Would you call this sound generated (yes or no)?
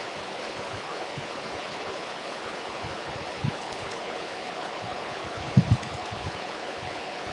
yes